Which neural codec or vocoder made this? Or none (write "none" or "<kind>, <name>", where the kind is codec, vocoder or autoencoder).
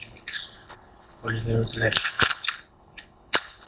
codec, HILCodec